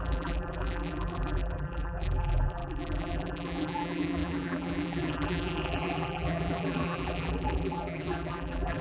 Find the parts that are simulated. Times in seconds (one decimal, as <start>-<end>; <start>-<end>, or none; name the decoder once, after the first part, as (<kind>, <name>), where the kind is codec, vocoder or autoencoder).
0.0-8.8 (vocoder, BigVGAN v2)